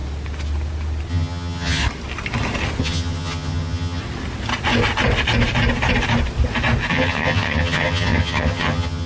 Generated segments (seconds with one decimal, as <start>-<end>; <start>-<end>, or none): 1.1-1.8; 2.8-4.0; 6.9-9.1